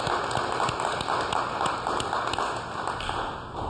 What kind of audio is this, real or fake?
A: real